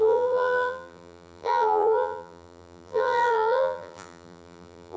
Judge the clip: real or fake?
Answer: fake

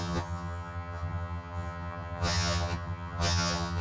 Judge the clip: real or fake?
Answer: fake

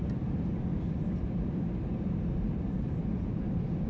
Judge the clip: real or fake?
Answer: fake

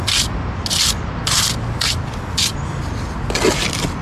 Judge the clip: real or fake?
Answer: real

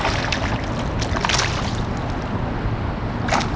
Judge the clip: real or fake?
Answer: real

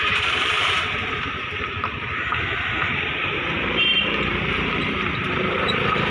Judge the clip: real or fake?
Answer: fake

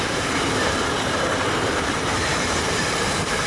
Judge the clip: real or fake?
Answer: fake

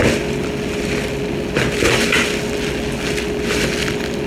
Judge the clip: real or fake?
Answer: real